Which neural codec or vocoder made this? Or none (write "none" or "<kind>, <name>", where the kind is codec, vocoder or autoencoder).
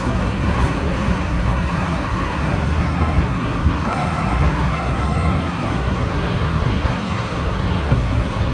codec, SNAC